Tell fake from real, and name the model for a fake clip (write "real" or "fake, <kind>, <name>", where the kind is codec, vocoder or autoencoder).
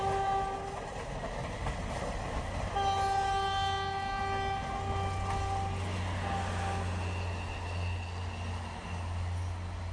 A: real